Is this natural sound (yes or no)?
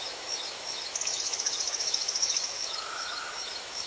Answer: no